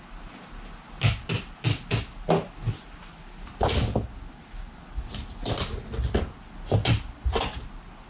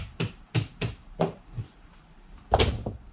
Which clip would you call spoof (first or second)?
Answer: second